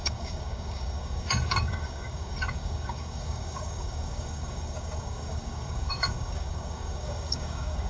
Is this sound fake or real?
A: fake